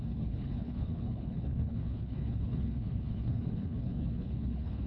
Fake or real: fake